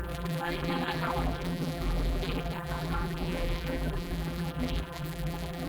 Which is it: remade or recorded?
remade